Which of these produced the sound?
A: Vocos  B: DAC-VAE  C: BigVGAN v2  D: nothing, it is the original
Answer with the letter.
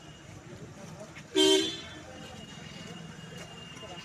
C